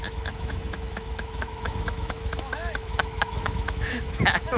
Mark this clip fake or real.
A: fake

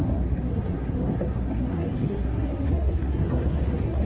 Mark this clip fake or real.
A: fake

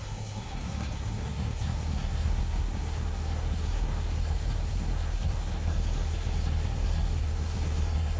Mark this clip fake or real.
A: fake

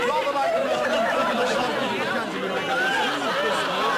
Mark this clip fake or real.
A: real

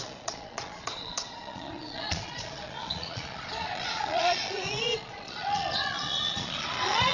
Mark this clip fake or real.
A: fake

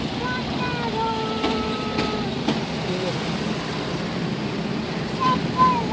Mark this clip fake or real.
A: real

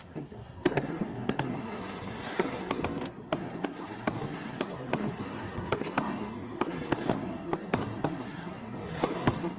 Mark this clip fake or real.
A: fake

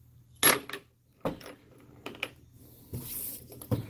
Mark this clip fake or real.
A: real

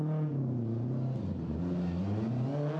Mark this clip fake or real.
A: real